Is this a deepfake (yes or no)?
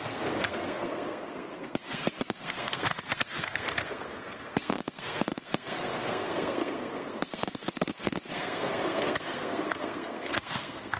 yes